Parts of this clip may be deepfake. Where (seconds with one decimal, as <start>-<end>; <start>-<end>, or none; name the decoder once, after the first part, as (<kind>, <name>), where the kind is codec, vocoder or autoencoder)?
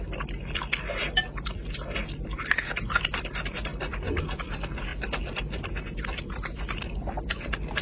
none